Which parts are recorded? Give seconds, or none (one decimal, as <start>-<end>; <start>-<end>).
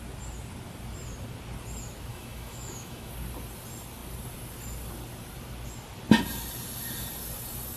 0.0-2.1; 3.1-7.8